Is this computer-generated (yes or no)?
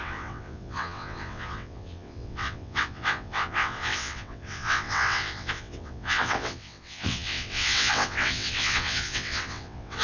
yes